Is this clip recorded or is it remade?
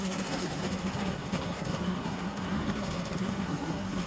remade